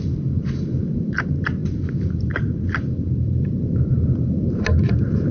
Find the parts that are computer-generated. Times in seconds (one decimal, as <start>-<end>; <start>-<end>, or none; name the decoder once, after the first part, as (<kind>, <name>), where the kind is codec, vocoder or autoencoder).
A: 0.0-5.3 (vocoder, BigVGAN v2)